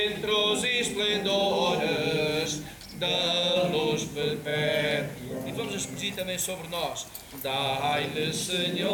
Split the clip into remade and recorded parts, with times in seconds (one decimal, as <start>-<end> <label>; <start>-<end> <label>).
0.0-8.9 recorded